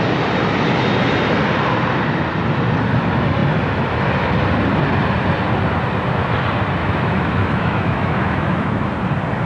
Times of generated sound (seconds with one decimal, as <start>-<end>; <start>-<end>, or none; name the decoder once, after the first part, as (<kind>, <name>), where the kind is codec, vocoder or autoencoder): 6.8-8.9 (autoencoder, DAC-VAE)